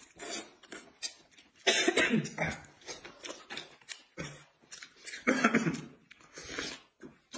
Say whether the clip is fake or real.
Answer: real